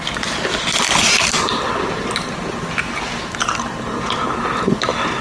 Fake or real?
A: real